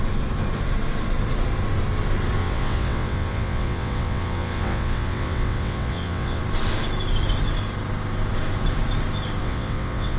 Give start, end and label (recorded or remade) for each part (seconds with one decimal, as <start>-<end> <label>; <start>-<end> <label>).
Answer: 0.0-2.4 recorded; 2.4-6.4 remade; 6.4-9.4 recorded; 9.4-10.2 remade